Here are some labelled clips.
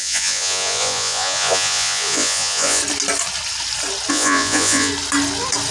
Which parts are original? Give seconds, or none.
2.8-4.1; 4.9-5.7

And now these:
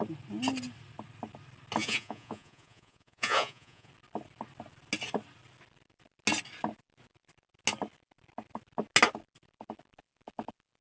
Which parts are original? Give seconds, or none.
0.0-1.8; 3.9-10.8

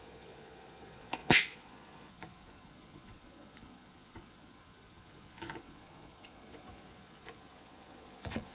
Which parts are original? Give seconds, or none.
none

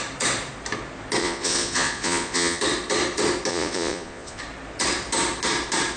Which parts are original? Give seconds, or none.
0.0-1.2; 2.6-3.5; 4.4-6.0

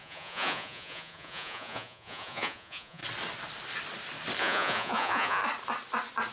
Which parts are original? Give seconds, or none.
3.0-4.4; 5.4-6.3